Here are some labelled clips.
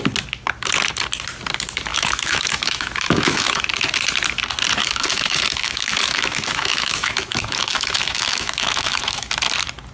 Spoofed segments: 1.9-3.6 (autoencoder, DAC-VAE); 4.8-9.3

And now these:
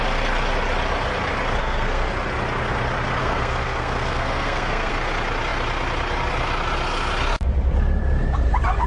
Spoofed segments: 1.6-2.1 (codec, SNAC); 3.2-4.9

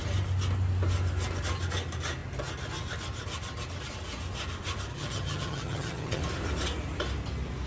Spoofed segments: 4.9-6.2 (vocoder, HiFi-GAN)

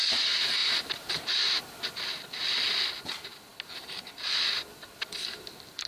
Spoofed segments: 0.6-1.6 (vocoder, BigVGAN v2)

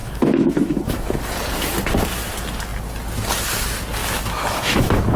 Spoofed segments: 0.0-1.2 (autoencoder, DAC-VAE); 4.0-5.2

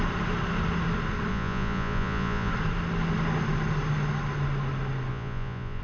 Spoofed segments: 1.3-2.5 (vocoder, Vocos); 5.1-5.8